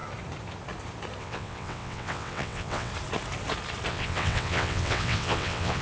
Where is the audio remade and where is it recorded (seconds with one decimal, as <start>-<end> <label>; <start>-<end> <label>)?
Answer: 0.0-1.2 recorded; 1.2-2.9 remade; 2.9-3.9 recorded; 3.9-5.8 remade